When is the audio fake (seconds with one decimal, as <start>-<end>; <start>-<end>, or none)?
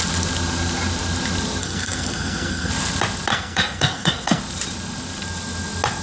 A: 1.6-2.7; 3.3-4.4